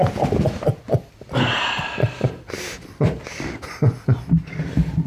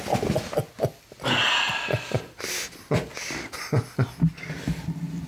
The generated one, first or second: first